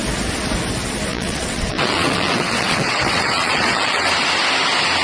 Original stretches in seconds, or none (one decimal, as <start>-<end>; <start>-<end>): 0.0-1.1; 4.1-5.0